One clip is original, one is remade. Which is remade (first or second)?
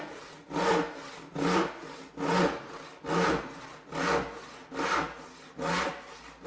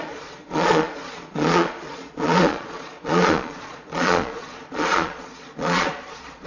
second